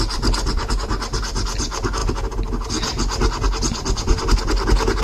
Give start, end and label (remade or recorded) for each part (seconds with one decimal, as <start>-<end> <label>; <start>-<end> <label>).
0.0-5.0 recorded